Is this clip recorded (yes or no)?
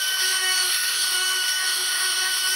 no